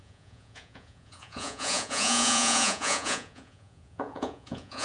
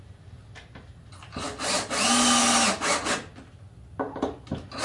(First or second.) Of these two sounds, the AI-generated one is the first